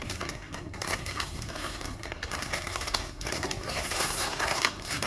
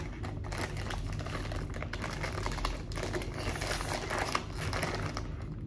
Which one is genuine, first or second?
second